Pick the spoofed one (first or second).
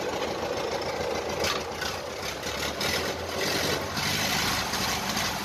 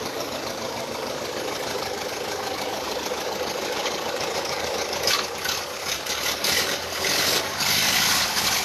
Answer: second